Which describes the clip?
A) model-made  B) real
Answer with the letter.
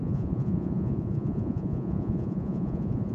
A